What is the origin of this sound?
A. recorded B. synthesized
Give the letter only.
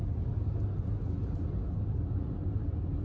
A